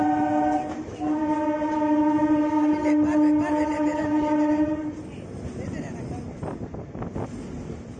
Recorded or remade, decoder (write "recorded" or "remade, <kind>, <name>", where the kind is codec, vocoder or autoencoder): recorded